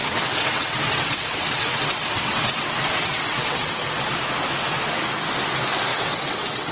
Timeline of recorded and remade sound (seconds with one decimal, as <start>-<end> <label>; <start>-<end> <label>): 0.0-4.0 remade; 4.0-5.9 recorded; 5.9-6.7 remade